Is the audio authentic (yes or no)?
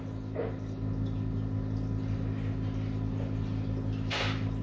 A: yes